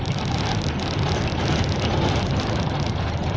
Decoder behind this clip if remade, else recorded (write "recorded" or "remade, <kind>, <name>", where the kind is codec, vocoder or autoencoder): recorded